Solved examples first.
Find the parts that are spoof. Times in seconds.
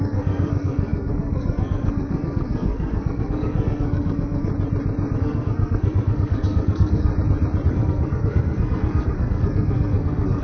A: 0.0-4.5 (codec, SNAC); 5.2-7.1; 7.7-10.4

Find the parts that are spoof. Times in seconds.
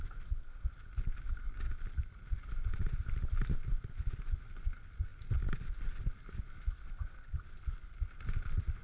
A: none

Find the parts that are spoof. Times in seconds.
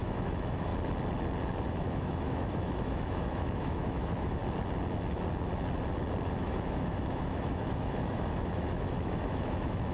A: 0.0-0.7 (autoencoder, DAC-VAE); 1.7-4.4; 6.4-9.9